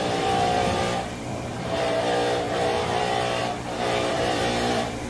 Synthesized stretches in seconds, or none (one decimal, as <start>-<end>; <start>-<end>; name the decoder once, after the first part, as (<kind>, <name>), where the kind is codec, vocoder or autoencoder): 0.0-3.4 (vocoder, BigVGAN v2); 4.1-5.1